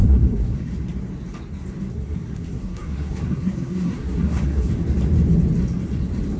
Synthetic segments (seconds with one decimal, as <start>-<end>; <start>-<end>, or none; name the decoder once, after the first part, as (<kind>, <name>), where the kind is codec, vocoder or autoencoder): 0.0-0.7 (codec, SNAC); 1.9-4.7